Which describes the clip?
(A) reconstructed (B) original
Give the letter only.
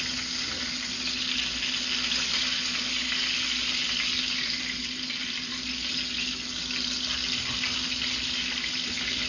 B